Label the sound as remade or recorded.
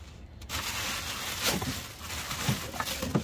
recorded